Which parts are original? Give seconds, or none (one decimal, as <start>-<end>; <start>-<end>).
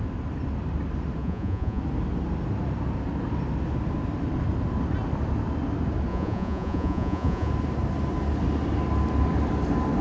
0.0-1.2; 1.8-6.1; 7.5-10.0